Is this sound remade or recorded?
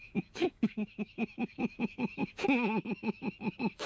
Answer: remade